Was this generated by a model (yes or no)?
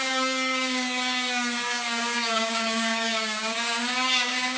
yes